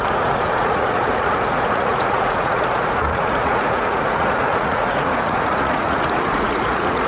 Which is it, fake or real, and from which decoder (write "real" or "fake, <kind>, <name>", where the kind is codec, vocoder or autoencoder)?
fake, vocoder, Vocos